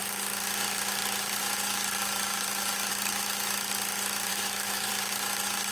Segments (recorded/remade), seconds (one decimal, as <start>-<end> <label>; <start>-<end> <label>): 0.0-4.3 recorded; 4.3-4.9 remade; 4.9-5.7 recorded